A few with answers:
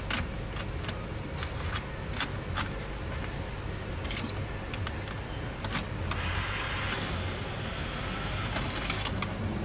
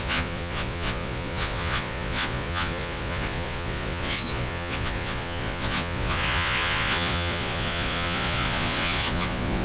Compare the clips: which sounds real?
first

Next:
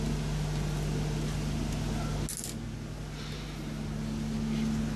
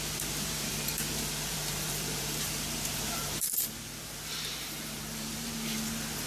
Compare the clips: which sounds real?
first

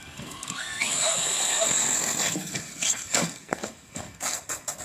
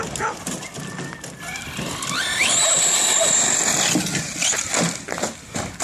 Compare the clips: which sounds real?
second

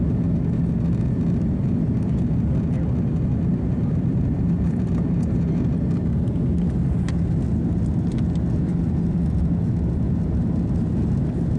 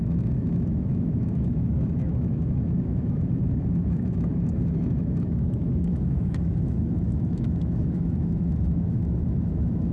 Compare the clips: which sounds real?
first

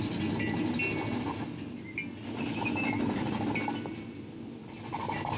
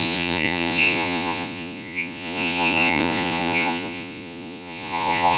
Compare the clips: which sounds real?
first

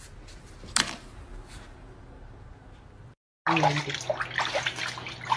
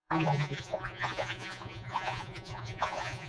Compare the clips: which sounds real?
first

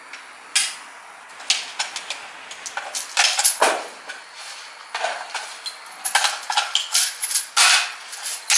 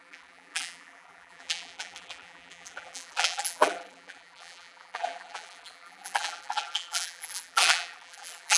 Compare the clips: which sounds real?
first